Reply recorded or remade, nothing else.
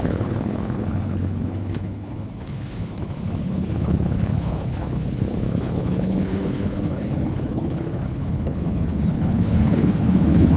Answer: remade